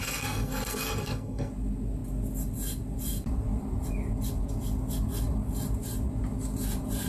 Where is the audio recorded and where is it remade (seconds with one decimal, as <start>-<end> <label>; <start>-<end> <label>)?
0.0-1.5 remade; 1.5-7.1 recorded